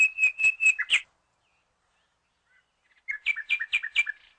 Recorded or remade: recorded